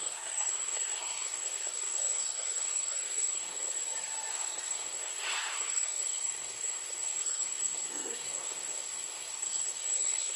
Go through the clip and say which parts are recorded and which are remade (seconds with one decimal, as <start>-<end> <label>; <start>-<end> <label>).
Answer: 0.0-3.8 remade; 3.8-4.3 recorded; 4.3-10.4 remade